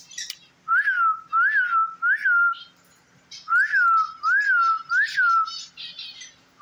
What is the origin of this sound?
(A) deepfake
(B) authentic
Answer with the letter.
B